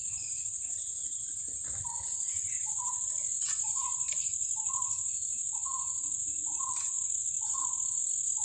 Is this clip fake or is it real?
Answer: real